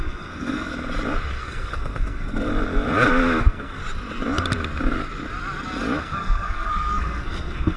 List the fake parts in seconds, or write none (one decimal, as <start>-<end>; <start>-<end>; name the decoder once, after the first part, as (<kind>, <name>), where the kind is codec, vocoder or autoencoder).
0.0-0.7 (codec, SNAC); 1.3-2.5; 3.4-3.8; 6.0-7.8

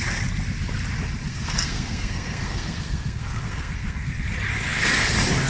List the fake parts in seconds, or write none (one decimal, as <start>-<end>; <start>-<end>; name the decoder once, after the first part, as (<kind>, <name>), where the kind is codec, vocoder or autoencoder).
1.3-4.1 (codec, SNAC)

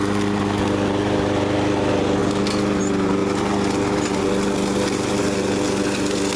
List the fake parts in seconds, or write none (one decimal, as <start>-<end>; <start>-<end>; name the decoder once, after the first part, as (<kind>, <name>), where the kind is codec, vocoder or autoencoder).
none

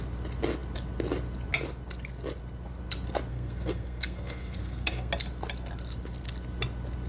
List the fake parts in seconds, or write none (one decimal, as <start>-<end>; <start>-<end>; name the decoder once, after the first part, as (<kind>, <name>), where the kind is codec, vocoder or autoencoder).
3.3-5.1 (codec, SNAC)

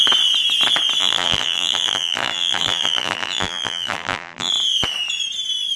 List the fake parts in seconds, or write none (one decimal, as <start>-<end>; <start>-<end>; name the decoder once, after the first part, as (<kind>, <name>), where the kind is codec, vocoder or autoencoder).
1.0-4.5 (vocoder, BigVGAN v2)

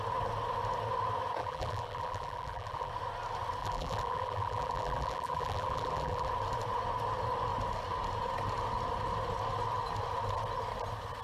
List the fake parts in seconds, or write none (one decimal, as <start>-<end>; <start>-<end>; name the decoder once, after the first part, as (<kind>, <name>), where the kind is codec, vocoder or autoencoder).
1.4-2.9 (vocoder, BigVGAN v2); 3.6-6.3

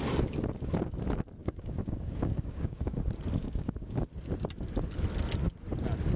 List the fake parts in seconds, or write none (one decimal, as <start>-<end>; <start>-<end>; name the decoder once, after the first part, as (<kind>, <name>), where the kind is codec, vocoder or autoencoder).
1.4-2.9 (codec, DAC); 3.4-4.1